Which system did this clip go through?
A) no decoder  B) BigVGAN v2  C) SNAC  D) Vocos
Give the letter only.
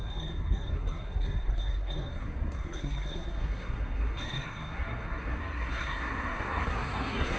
C